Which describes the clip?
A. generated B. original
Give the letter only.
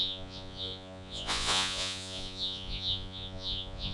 A